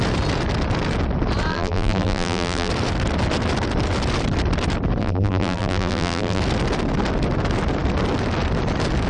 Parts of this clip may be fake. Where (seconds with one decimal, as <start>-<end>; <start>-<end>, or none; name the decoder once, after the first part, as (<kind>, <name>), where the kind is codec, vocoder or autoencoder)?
1.5-2.7 (vocoder, BigVGAN v2); 5.0-6.4